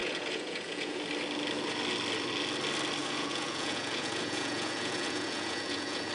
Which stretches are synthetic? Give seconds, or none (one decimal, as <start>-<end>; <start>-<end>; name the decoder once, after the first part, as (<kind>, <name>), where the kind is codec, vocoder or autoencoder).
0.0-1.0 (vocoder, Vocos); 3.0-6.1